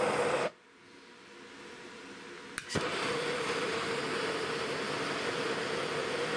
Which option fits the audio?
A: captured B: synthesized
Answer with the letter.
A